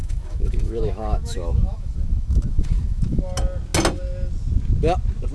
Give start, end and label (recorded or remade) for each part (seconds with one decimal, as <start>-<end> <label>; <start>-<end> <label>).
0.0-3.2 remade; 3.2-5.3 recorded